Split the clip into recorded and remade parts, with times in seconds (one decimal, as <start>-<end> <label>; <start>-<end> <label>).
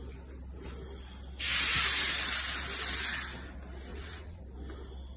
0.0-3.9 recorded; 3.9-4.4 remade; 4.4-5.2 recorded